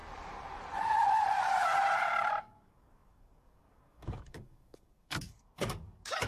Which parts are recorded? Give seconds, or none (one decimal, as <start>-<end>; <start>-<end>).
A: 0.0-2.4